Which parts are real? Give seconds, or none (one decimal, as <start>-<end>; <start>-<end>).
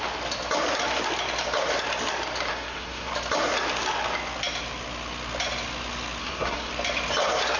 0.0-2.5; 3.1-6.2; 6.7-7.6